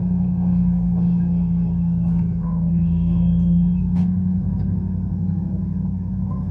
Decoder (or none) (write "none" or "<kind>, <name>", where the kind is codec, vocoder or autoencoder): codec, SNAC